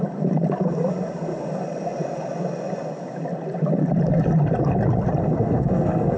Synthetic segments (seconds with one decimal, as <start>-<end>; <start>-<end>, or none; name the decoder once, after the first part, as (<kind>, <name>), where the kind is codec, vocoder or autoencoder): 5.2-6.2 (codec, SNAC)